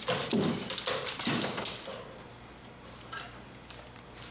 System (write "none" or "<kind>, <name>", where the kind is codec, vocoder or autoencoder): none